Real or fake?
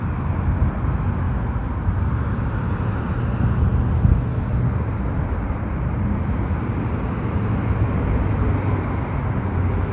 real